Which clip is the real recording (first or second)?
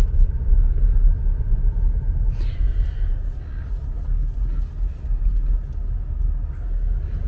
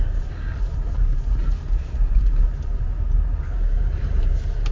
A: first